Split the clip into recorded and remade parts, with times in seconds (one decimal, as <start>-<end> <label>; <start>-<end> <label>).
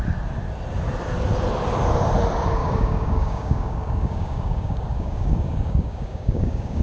0.0-2.6 recorded; 2.6-6.8 remade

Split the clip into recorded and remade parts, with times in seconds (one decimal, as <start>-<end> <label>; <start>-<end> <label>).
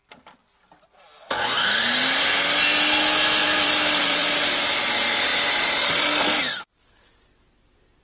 0.0-3.4 recorded; 3.4-4.5 remade; 4.5-8.0 recorded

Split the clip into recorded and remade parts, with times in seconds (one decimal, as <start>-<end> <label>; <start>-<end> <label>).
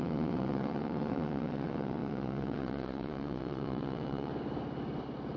0.0-4.3 remade; 4.3-5.4 recorded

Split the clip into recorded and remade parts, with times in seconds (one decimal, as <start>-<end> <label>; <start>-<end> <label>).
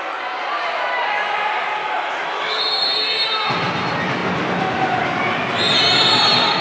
0.0-1.8 recorded; 1.8-2.6 remade; 2.6-6.6 recorded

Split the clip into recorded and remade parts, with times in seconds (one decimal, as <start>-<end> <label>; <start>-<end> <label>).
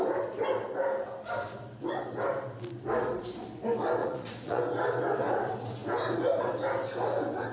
0.0-4.0 recorded; 4.0-4.6 remade; 4.6-7.5 recorded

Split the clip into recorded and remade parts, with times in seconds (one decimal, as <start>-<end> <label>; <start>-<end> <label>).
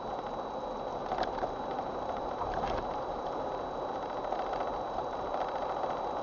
0.0-0.9 recorded; 0.9-3.5 remade; 3.5-6.2 recorded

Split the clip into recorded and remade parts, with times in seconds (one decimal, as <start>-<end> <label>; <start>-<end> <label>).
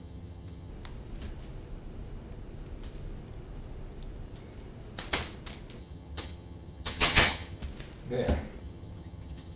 0.0-0.7 remade; 0.7-5.8 recorded; 5.8-7.6 remade; 7.6-8.6 recorded; 8.6-9.6 remade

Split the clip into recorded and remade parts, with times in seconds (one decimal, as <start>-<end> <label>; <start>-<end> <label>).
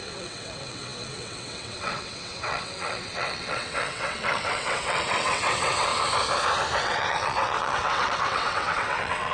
0.0-5.9 remade; 5.9-6.8 recorded; 6.8-9.3 remade